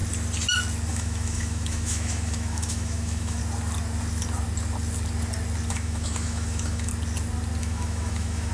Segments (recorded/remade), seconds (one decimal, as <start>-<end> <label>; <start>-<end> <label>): 0.0-0.9 recorded; 0.9-3.4 remade; 3.4-5.7 recorded; 5.7-6.9 remade; 6.9-7.6 recorded; 7.6-8.5 remade